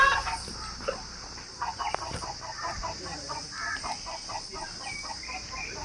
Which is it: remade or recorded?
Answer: remade